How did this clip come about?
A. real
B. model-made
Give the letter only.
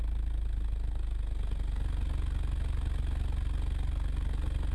A